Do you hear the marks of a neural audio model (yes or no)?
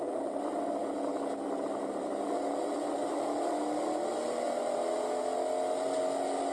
no